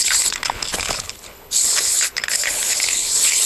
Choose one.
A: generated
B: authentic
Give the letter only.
A